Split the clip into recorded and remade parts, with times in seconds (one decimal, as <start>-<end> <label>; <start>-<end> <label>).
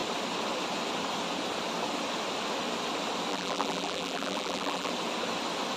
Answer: 0.0-3.3 recorded; 3.3-4.9 remade; 4.9-5.8 recorded